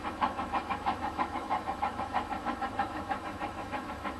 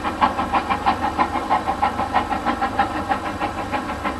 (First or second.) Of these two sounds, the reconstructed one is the first